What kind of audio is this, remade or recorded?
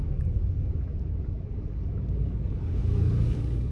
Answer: remade